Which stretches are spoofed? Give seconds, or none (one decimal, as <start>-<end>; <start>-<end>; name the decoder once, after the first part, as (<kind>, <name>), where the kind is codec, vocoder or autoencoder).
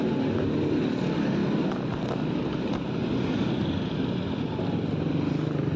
none